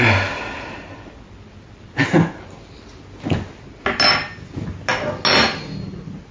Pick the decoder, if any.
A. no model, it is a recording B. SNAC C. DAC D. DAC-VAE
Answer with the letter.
A